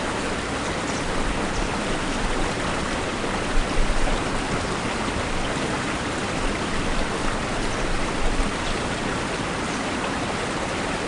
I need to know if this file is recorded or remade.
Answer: recorded